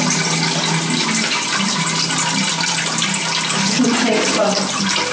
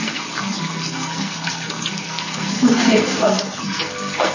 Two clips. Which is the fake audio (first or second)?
second